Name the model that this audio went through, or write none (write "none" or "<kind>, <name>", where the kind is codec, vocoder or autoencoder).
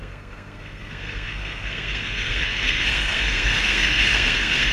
codec, SNAC